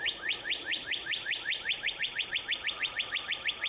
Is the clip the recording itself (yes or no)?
no